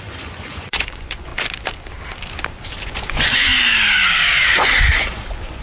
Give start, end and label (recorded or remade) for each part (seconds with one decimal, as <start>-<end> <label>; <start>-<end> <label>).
0.0-1.3 remade; 1.3-2.8 recorded; 2.8-3.5 remade; 3.5-4.6 recorded; 4.6-5.6 remade